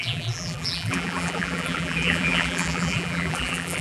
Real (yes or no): no